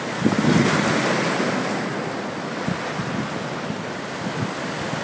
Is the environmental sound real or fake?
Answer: real